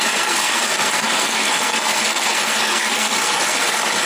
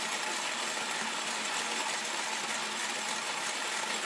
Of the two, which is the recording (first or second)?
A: second